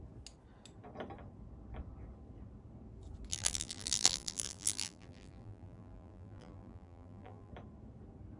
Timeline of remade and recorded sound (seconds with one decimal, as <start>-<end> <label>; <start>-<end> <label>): 0.0-3.3 recorded; 3.3-7.5 remade; 7.5-8.4 recorded